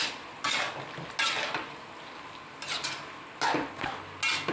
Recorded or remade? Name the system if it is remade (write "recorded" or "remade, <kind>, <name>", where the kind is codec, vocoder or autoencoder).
recorded